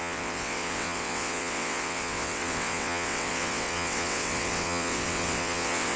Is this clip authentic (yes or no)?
no